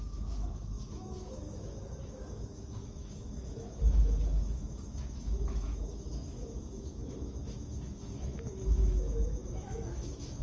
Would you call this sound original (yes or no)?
no